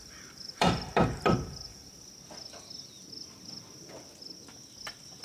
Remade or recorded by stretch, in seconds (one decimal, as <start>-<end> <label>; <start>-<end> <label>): 0.0-2.1 remade; 2.1-5.2 recorded